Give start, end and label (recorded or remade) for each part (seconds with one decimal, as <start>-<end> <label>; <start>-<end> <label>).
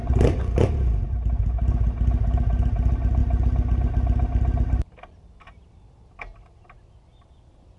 0.0-0.7 remade; 0.7-7.8 recorded